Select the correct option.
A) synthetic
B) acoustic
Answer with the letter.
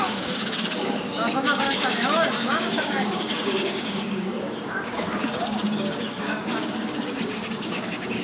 A